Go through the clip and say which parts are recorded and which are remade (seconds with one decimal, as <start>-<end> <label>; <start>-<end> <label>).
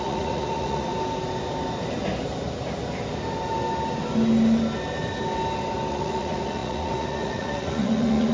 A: 0.0-0.9 remade; 0.9-5.9 recorded; 5.9-8.3 remade